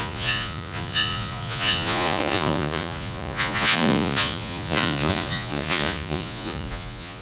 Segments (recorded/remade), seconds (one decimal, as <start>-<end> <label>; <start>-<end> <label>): 0.0-7.2 remade